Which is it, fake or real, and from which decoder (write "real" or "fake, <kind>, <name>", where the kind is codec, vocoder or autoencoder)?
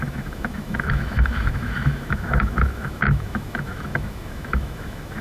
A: fake, autoencoder, DAC-VAE